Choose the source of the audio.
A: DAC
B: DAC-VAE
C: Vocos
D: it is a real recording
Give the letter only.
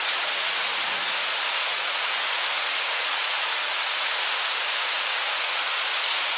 C